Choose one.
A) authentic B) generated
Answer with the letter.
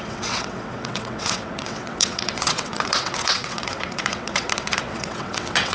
B